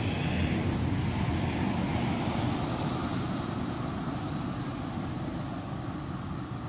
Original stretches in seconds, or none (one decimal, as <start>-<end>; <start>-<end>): 0.0-6.7